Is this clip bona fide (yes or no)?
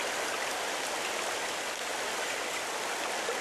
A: yes